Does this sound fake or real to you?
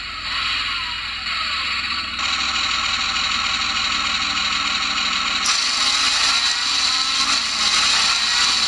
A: real